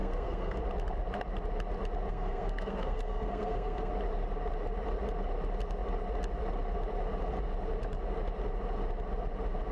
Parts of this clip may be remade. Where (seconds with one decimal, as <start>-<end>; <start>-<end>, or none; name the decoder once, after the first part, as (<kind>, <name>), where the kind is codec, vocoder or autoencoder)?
0.0-0.6 (codec, SNAC); 2.1-3.9